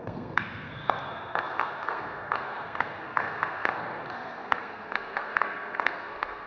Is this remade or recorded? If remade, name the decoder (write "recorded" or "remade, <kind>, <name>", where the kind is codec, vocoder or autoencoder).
remade, codec, SNAC